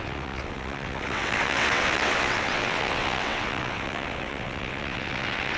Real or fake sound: fake